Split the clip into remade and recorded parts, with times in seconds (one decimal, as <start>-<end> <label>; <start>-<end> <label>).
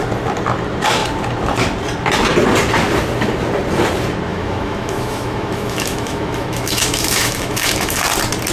0.0-4.3 recorded; 4.3-8.0 remade; 8.0-8.5 recorded